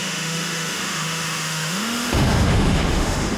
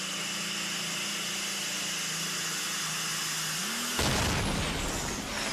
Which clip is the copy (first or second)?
first